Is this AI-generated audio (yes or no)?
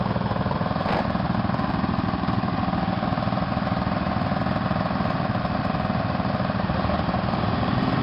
no